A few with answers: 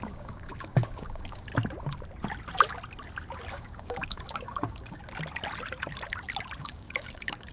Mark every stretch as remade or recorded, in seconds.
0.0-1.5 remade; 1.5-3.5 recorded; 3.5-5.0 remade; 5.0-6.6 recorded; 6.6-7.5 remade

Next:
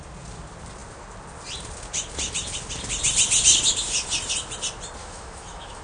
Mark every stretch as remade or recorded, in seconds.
0.0-5.0 recorded; 5.0-5.8 remade

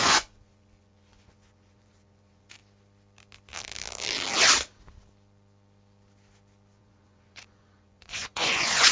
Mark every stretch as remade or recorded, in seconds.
0.0-2.6 remade; 2.6-6.8 recorded; 6.8-8.9 remade